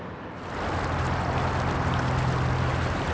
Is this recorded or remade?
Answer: recorded